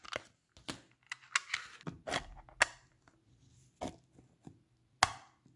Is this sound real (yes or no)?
yes